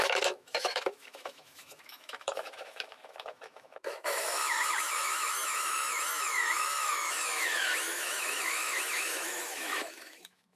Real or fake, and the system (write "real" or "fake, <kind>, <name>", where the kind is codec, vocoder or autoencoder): fake, autoencoder, DAC-VAE